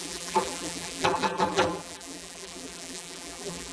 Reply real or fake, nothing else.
fake